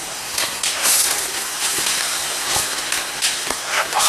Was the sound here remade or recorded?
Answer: remade